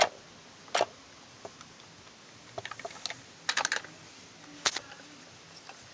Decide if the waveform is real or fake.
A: real